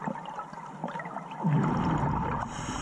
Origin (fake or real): real